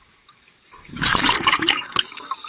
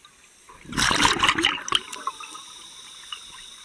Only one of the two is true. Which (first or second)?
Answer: second